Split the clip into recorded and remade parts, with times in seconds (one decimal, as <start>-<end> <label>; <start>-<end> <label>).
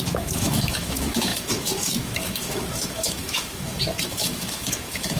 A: 0.0-5.2 remade